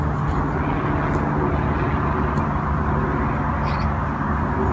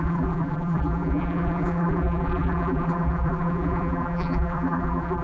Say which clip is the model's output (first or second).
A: second